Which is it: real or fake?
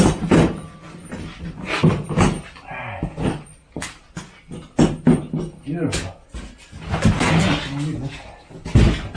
real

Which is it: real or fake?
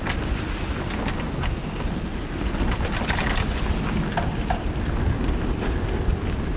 real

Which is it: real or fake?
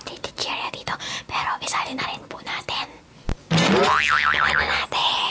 real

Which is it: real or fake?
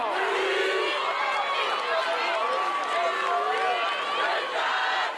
real